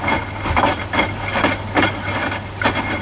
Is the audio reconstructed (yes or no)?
no